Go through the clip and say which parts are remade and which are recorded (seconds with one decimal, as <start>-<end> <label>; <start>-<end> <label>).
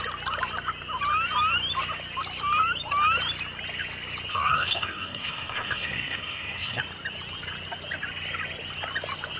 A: 0.0-4.3 recorded; 4.3-6.8 remade; 6.8-9.4 recorded